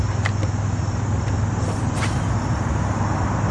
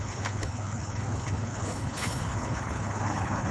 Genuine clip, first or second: first